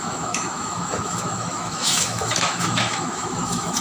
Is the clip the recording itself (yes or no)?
no